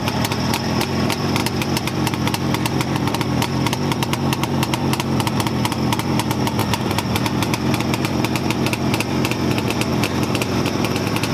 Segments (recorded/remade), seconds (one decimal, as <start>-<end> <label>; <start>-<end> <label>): 0.0-11.3 remade